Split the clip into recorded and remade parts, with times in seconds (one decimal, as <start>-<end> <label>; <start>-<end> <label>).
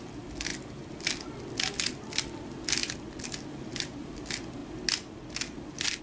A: 0.0-6.0 recorded